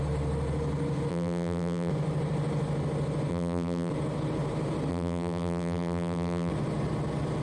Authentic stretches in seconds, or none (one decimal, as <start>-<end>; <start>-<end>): 0.0-1.1; 1.9-3.3; 3.9-4.9; 6.5-7.4

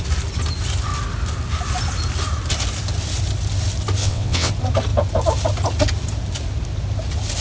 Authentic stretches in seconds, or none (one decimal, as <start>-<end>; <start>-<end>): 0.0-4.0; 4.5-7.4

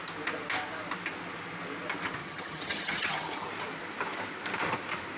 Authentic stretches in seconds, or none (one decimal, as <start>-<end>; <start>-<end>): 0.0-2.2; 3.5-5.2

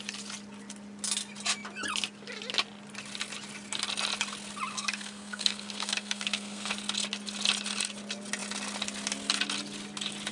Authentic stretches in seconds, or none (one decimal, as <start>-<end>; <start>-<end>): 0.0-4.7; 6.7-10.3

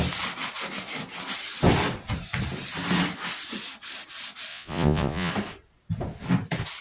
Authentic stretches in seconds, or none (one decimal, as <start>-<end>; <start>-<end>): 0.0-4.5; 5.3-6.8

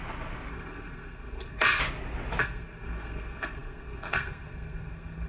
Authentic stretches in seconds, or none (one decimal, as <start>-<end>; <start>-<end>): 0.0-0.5; 1.8-2.4

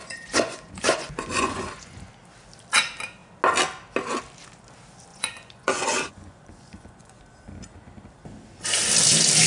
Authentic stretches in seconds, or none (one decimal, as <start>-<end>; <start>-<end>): 2.1-5.1; 7.2-9.5